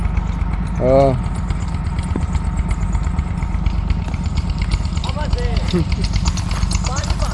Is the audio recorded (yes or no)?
yes